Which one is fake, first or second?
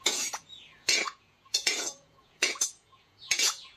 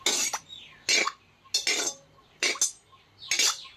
first